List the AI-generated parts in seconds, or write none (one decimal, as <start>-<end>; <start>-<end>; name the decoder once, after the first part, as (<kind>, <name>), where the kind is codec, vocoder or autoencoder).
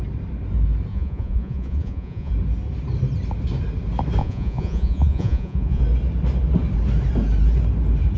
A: 0.9-2.3 (vocoder, Vocos); 4.2-5.8